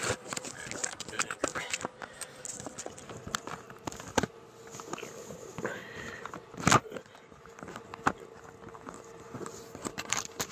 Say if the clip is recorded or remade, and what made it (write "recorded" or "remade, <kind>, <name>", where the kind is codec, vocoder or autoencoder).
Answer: recorded